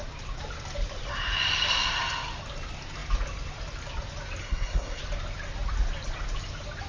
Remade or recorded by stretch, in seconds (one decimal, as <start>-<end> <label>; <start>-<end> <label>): 0.0-4.4 recorded; 4.4-5.0 remade; 5.0-6.9 recorded